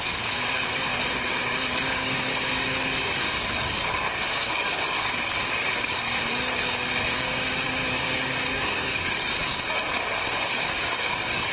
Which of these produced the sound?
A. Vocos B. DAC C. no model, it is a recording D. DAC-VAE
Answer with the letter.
B